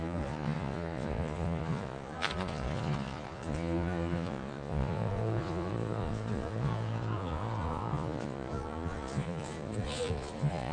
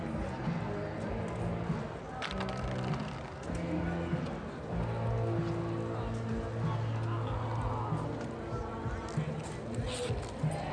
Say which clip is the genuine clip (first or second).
second